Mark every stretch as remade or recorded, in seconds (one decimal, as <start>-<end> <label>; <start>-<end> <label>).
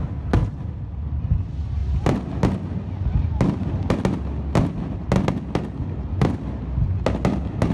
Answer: 0.0-7.7 recorded